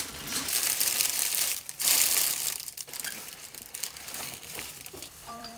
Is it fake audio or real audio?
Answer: fake